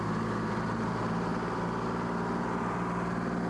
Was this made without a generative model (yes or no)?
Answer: yes